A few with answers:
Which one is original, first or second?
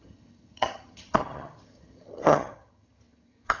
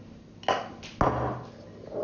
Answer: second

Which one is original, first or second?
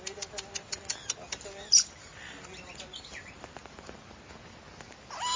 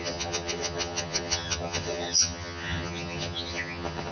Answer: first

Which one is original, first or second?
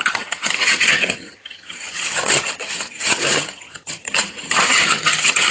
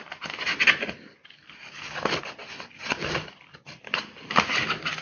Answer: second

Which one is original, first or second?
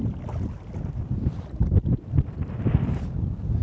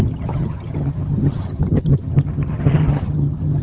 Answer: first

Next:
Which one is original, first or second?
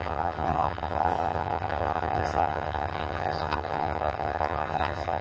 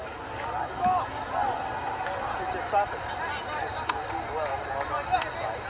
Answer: second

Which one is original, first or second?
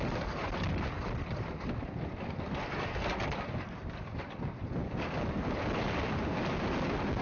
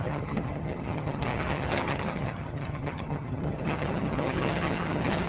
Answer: first